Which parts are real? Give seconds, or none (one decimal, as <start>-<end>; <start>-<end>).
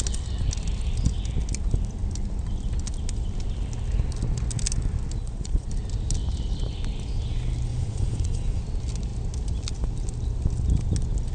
0.0-5.2; 5.7-7.7; 8.6-11.3